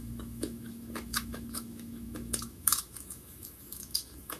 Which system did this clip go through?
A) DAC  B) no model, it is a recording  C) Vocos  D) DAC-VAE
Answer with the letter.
D